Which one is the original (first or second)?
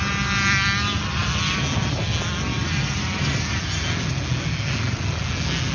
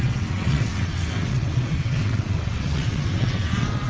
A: first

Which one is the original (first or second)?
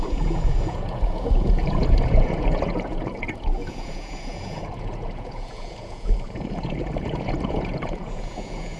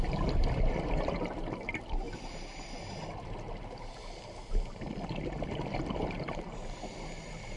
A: second